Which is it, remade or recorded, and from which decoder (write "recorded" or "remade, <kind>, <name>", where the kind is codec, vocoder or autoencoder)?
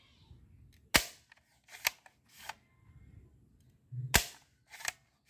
recorded